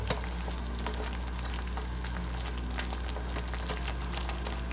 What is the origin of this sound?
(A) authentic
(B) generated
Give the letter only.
A